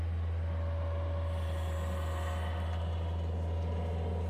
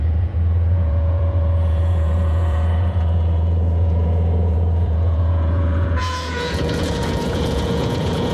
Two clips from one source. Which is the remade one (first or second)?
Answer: second